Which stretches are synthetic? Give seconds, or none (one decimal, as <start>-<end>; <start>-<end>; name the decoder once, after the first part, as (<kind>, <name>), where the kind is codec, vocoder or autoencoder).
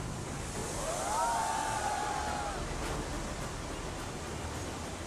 none